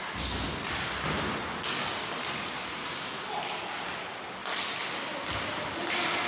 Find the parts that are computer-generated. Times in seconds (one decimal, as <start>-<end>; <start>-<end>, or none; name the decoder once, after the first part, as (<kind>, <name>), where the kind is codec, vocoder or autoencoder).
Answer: none